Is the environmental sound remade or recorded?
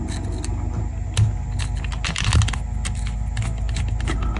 recorded